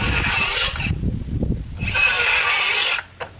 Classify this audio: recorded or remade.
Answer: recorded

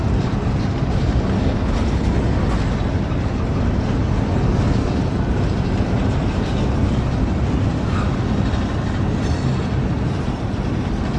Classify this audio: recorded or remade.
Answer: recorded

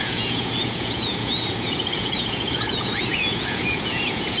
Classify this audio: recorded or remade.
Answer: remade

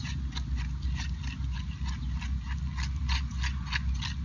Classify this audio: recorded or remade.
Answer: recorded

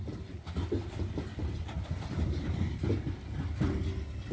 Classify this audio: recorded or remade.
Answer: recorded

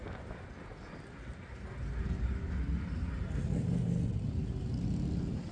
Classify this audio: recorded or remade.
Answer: recorded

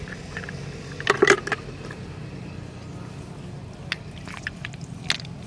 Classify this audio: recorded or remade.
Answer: recorded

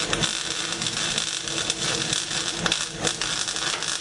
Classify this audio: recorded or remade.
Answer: recorded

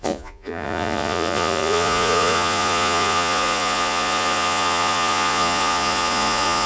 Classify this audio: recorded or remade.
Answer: remade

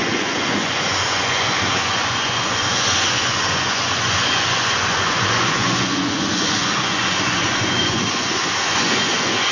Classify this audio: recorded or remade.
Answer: remade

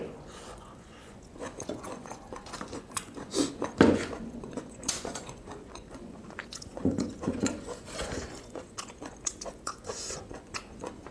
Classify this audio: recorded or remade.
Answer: remade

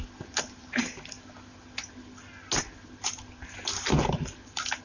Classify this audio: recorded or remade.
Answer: recorded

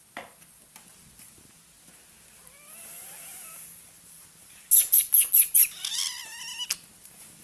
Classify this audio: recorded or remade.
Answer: recorded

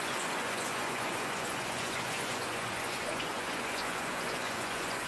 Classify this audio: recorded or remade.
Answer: remade